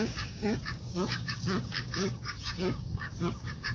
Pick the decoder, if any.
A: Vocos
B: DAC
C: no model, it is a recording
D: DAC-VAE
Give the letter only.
B